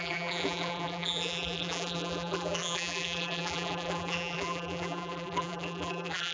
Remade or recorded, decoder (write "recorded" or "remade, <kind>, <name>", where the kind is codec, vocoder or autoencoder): remade, vocoder, BigVGAN v2